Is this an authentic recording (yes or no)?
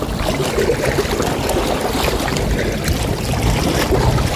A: yes